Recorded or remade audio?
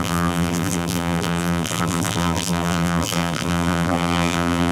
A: remade